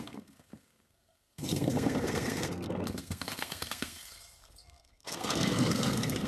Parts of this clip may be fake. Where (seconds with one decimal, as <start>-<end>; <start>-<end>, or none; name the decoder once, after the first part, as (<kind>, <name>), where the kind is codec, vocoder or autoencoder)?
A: 0.0-6.3 (codec, SNAC)